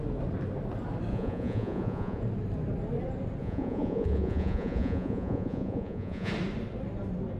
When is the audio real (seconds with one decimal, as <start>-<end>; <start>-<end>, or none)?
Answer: 0.0-1.1; 2.2-3.4; 6.3-7.4